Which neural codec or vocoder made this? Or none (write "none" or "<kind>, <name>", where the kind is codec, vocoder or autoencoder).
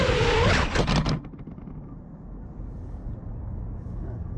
none